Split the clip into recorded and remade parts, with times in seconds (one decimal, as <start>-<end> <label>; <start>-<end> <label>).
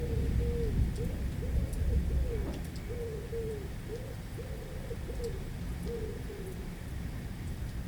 0.0-7.9 recorded